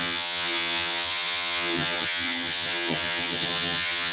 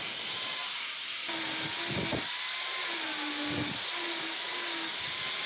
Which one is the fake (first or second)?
first